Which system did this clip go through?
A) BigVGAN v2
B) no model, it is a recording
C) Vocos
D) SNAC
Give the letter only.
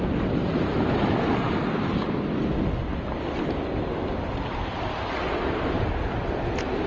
B